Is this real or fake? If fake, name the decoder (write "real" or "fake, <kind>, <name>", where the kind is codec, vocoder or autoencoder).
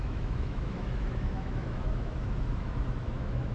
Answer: fake, autoencoder, DAC-VAE